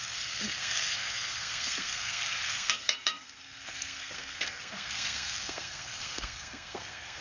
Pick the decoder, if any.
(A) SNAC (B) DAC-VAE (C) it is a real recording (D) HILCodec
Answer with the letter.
A